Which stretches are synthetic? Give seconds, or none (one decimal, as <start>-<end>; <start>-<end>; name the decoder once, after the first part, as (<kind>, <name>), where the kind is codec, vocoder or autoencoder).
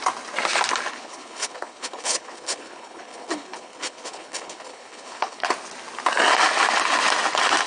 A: 0.9-5.5 (codec, HILCodec)